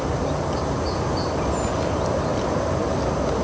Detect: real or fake real